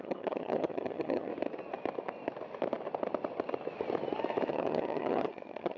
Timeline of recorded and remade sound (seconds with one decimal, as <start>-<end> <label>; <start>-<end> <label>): 0.0-1.3 remade; 1.3-4.5 recorded; 4.5-5.8 remade